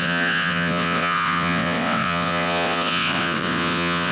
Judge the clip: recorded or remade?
remade